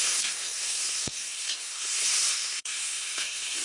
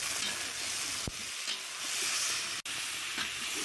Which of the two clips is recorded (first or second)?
second